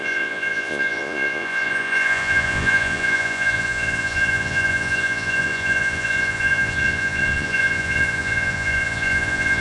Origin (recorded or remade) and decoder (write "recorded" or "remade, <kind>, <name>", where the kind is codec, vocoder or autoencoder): remade, vocoder, Vocos